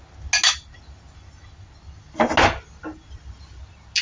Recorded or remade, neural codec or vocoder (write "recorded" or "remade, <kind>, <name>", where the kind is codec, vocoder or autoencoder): recorded